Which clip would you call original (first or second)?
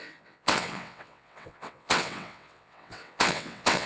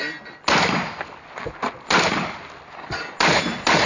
second